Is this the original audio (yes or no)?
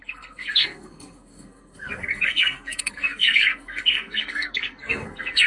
no